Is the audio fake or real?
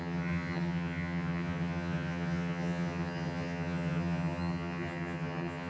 fake